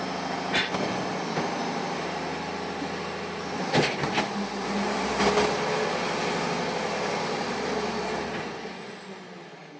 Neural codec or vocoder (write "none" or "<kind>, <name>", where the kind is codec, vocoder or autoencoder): none